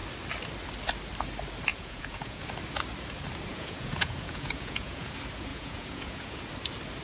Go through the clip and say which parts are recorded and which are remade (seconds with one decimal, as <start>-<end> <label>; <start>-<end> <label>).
0.0-1.7 recorded; 1.7-2.4 remade; 2.4-3.5 recorded; 3.5-5.1 remade; 5.1-5.5 recorded; 5.5-6.5 remade; 6.5-7.0 recorded